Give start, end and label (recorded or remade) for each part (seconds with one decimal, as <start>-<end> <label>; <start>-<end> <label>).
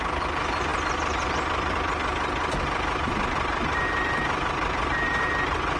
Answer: 0.0-5.8 recorded